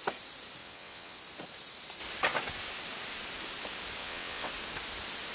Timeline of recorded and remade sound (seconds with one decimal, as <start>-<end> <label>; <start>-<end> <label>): 0.0-0.6 recorded; 0.6-1.2 remade; 1.2-4.0 recorded; 4.0-4.5 remade; 4.5-5.3 recorded